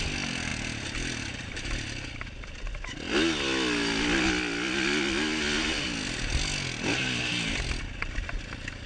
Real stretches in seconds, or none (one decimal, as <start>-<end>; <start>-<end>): 0.0-8.9